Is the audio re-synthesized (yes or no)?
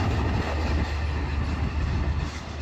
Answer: no